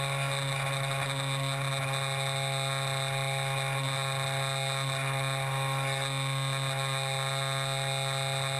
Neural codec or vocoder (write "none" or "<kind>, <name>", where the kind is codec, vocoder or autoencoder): none